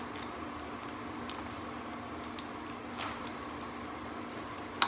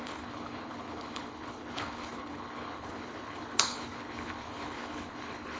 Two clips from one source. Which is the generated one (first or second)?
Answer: second